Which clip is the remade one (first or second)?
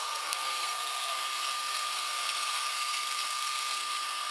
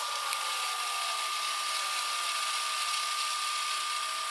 first